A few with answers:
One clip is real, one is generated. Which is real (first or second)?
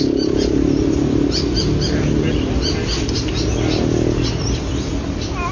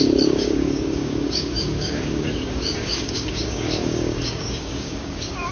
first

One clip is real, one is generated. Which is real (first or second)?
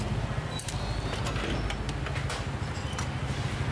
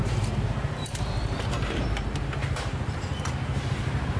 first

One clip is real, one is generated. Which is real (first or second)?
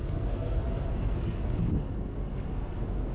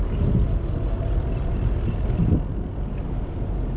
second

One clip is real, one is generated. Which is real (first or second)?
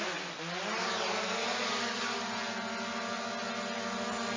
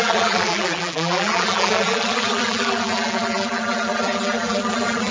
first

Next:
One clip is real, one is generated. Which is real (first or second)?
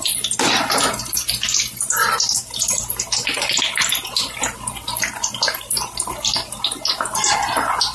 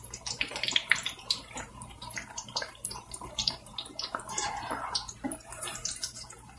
first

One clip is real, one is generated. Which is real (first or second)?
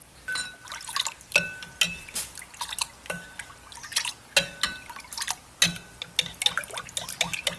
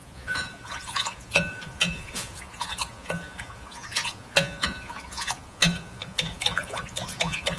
first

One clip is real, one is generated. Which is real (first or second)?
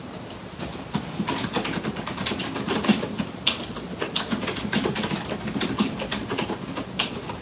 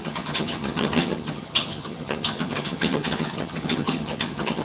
first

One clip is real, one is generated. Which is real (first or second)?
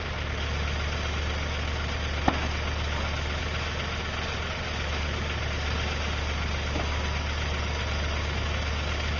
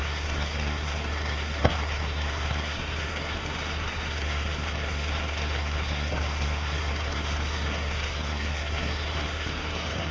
first